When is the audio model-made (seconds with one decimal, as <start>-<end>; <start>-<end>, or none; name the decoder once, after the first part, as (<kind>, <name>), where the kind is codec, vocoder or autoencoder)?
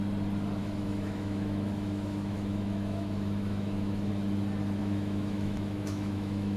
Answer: 0.6-4.1 (autoencoder, DAC-VAE); 4.8-6.6